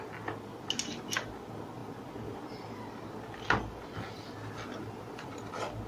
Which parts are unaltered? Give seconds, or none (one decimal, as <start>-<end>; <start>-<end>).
0.0-5.9